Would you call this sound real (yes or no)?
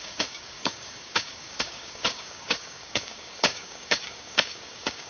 no